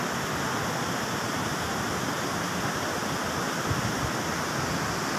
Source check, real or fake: real